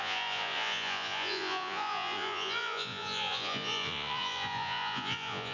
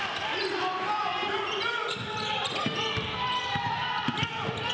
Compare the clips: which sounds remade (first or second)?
first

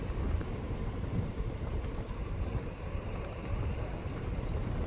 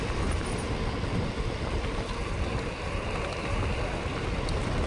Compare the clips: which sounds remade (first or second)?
first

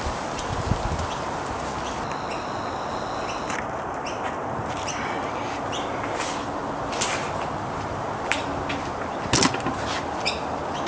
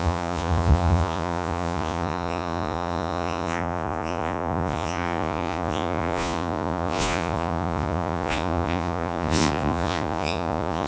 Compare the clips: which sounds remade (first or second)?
second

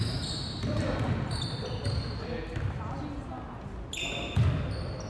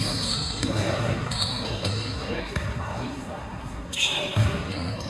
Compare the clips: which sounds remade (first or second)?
second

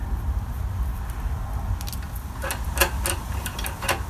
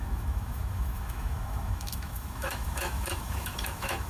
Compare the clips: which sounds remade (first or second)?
second